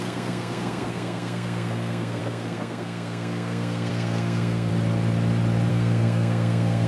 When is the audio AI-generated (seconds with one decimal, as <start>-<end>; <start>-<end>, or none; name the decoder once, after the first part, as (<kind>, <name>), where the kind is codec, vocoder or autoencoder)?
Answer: 0.0-4.7 (codec, SNAC); 5.7-6.9